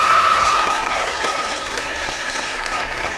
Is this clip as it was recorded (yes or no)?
no